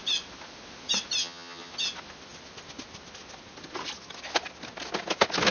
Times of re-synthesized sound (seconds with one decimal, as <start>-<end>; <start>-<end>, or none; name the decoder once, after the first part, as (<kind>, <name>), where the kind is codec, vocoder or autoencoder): 1.2-1.7 (vocoder, HiFi-GAN)